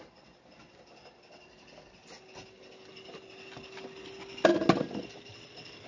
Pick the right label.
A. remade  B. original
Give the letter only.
B